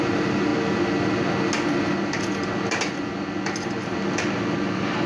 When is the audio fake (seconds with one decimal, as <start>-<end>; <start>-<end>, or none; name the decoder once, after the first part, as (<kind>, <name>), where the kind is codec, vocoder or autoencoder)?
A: 0.0-0.5 (vocoder, BigVGAN v2); 3.6-5.1